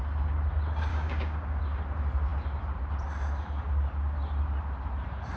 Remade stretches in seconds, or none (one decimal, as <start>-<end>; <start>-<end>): 0.9-1.6